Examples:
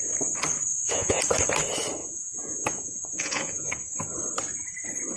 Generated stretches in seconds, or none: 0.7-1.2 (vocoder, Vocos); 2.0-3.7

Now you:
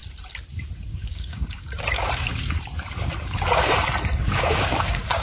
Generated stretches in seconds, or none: 0.9-2.3 (codec, DAC); 4.2-5.2

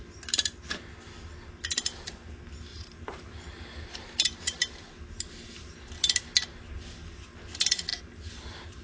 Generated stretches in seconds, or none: 2.7-5.5 (vocoder, BigVGAN v2); 7.9-8.8

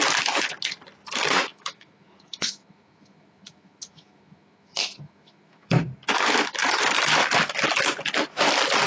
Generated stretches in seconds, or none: 1.5-5.8 (autoencoder, DAC-VAE)

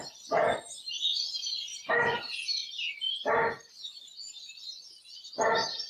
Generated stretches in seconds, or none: none

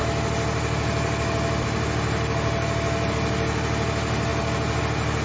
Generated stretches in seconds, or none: none

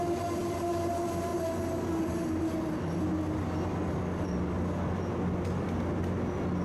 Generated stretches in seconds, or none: 0.4-0.9 (vocoder, BigVGAN v2)

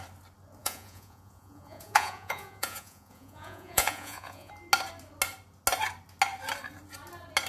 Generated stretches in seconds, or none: 0.6-4.5 (vocoder, Vocos)